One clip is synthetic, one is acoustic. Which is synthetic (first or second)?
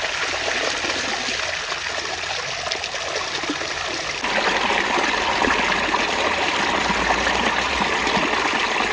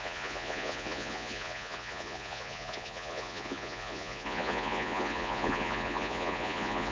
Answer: second